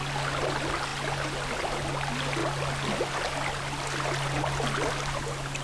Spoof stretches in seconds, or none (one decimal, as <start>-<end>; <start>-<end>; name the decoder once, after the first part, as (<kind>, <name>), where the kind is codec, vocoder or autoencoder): none